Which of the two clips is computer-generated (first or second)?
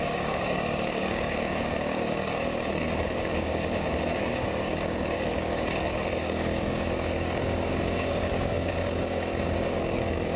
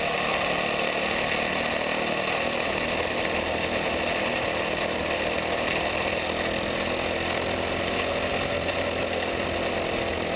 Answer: first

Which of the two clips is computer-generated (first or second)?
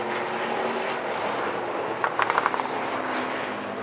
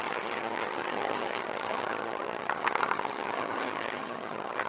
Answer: second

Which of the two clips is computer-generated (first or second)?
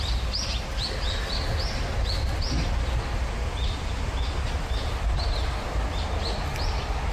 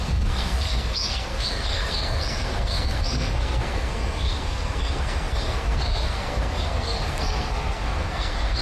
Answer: second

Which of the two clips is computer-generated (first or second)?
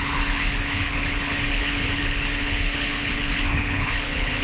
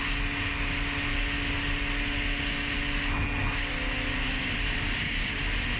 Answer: first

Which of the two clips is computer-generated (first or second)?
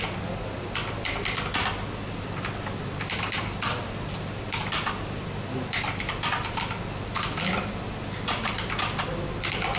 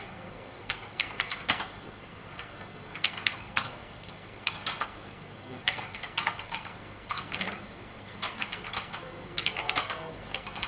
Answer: second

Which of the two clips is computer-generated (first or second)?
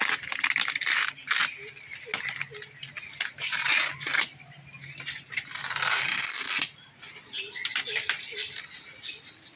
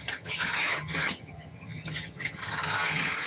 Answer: second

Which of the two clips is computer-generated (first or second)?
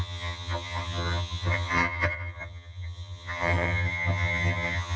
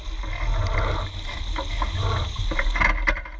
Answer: first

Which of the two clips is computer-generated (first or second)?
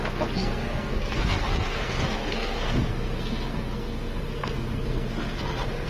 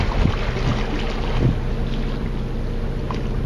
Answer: first